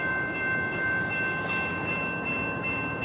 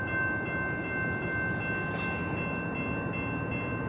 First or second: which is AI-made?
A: first